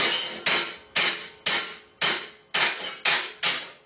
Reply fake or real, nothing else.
real